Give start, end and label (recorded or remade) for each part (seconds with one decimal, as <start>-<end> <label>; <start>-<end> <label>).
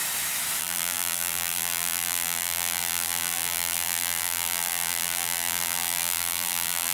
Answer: 0.0-0.6 recorded; 0.6-6.9 remade